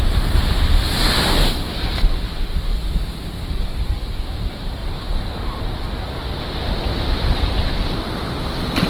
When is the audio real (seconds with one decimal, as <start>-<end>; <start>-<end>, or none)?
0.0-3.0; 4.2-8.9